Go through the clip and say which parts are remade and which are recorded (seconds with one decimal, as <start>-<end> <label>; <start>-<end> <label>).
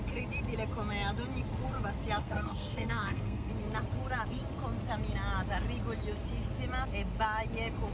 0.0-2.2 recorded; 2.2-3.5 remade; 3.5-7.9 recorded